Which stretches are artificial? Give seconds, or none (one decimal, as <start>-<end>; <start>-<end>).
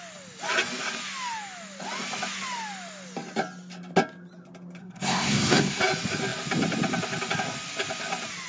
4.8-5.8